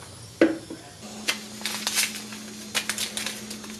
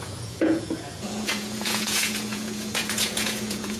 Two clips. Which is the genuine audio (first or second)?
first